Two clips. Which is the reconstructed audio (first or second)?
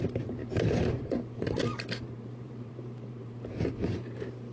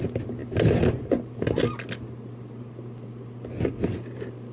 first